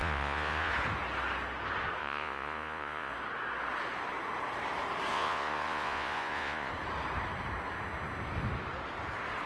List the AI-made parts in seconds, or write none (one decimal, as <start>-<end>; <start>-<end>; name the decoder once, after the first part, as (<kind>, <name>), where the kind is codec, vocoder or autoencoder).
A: 0.0-0.7 (vocoder, Vocos); 2.0-3.1; 5.1-6.7